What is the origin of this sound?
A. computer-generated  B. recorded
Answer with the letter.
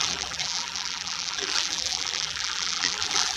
A